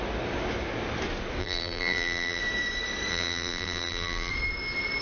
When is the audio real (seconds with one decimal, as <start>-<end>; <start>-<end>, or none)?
0.0-1.4; 2.4-3.1; 4.3-5.0